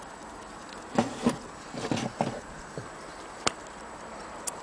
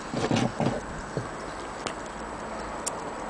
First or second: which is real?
second